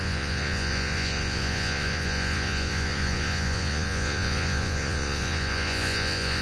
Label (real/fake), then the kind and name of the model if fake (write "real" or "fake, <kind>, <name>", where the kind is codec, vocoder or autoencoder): fake, vocoder, Vocos